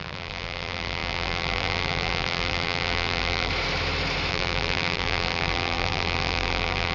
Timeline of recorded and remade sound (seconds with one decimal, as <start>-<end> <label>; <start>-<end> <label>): 0.0-3.5 remade; 3.5-4.3 recorded; 4.3-6.9 remade